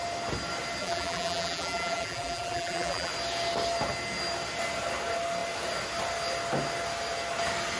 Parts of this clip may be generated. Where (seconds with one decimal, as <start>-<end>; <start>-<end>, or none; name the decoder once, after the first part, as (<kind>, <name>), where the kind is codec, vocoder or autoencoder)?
0.8-3.1 (vocoder, BigVGAN v2)